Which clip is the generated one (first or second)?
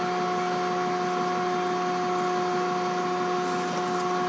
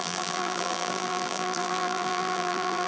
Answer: second